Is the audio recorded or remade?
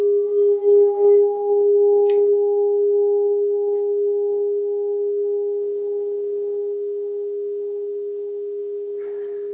recorded